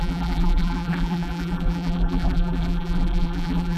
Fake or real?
fake